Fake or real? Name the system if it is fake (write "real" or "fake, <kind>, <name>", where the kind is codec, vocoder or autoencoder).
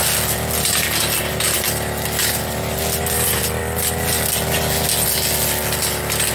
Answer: real